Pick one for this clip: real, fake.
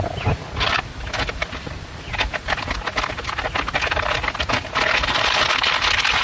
real